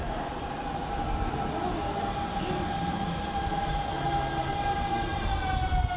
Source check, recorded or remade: recorded